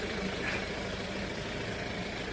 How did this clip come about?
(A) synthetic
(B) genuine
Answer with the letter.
A